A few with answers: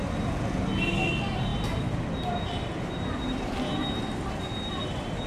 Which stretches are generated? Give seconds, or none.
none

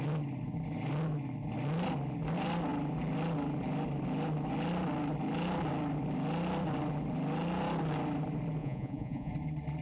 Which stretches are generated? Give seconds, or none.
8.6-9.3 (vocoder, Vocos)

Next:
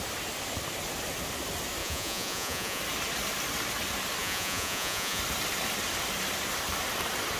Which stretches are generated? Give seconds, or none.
1.8-2.8 (vocoder, Vocos); 4.2-5.2